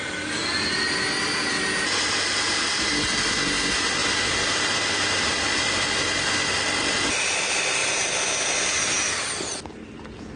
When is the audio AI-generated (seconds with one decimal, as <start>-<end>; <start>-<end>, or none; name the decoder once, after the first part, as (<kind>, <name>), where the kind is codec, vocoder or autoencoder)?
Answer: none